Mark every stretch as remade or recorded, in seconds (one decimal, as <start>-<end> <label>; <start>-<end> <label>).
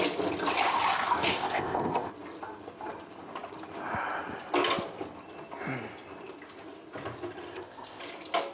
0.0-1.3 recorded; 1.3-2.1 remade; 2.1-7.5 recorded; 7.5-8.0 remade; 8.0-8.5 recorded